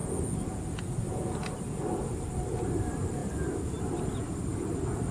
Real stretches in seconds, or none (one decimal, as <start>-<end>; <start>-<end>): 0.0-5.1